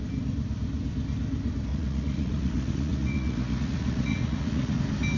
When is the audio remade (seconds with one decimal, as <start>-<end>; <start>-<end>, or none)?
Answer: 1.7-4.8